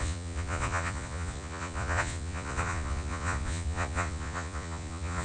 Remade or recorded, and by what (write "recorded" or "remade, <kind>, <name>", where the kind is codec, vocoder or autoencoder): remade, vocoder, Vocos